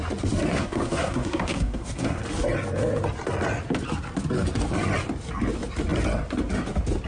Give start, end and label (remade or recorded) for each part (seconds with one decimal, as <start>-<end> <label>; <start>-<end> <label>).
0.0-0.5 recorded; 0.5-2.2 remade; 2.2-7.1 recorded